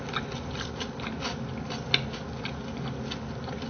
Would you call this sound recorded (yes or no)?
yes